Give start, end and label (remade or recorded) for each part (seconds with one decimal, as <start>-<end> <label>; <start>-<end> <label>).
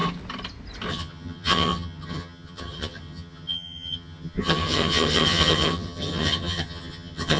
0.0-0.9 recorded; 0.9-7.4 remade